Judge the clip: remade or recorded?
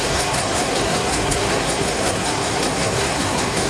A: remade